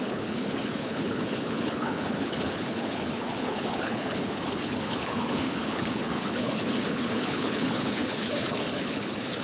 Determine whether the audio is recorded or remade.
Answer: remade